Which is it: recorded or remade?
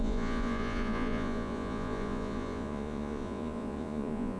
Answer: remade